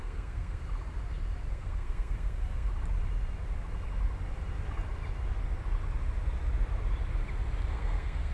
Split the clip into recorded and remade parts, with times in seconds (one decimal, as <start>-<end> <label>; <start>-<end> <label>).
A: 0.0-0.6 remade; 0.6-1.5 recorded; 1.5-2.7 remade; 2.7-7.7 recorded; 7.7-8.3 remade